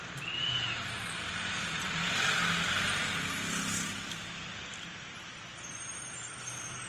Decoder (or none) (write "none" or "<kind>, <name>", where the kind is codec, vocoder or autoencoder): none